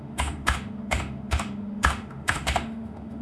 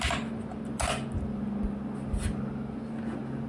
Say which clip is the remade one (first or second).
first